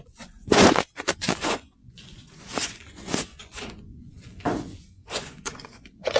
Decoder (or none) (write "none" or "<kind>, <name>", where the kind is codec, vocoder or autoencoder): vocoder, Vocos